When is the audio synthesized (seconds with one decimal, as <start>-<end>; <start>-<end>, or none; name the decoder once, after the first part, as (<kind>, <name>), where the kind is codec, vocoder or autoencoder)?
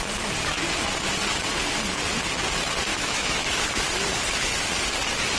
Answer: 2.9-3.9 (autoencoder, DAC-VAE)